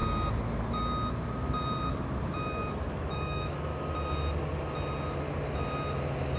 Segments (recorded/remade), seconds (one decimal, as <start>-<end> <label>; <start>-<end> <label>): 0.0-2.9 recorded; 2.9-3.7 remade; 3.7-6.4 recorded